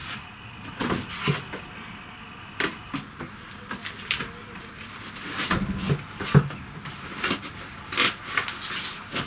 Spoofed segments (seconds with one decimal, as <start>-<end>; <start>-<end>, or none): none